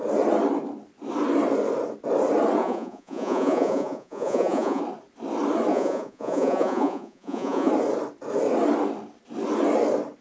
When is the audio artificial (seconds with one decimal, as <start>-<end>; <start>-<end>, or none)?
2.6-4.8; 5.7-7.7